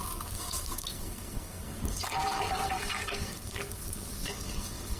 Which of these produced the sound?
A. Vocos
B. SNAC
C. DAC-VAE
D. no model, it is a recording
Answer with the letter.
B